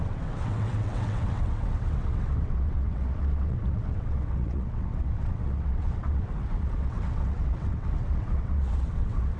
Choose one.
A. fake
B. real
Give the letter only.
A